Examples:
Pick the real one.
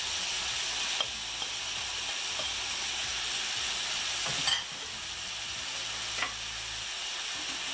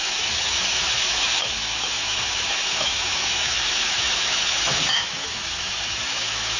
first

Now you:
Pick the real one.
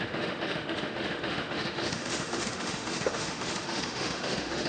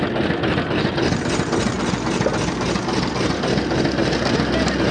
second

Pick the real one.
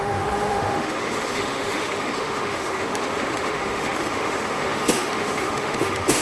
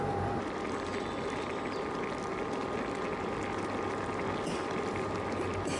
second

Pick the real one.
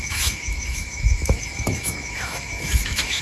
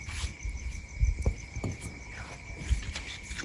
second